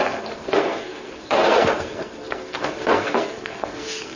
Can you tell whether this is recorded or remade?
remade